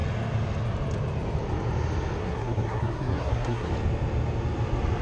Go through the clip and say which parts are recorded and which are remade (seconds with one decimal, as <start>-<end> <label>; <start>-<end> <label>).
0.0-2.2 recorded; 2.2-3.7 remade; 3.7-5.0 recorded